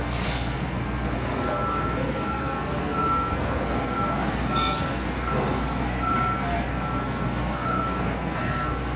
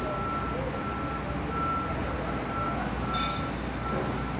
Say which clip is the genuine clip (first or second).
second